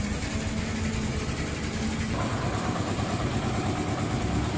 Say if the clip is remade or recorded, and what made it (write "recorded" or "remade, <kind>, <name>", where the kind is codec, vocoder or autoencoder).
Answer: recorded